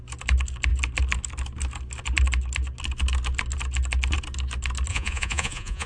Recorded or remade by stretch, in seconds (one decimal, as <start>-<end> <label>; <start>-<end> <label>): 0.0-4.9 recorded; 4.9-5.9 remade